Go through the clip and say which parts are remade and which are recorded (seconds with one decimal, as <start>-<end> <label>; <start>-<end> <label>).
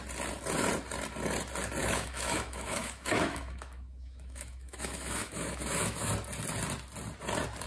0.0-1.8 recorded; 1.8-6.1 remade; 6.1-7.7 recorded